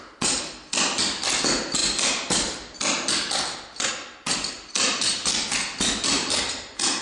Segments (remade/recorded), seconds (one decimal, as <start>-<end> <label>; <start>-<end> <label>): 0.0-7.0 recorded